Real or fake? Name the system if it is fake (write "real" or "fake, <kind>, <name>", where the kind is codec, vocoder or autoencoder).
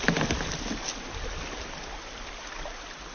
real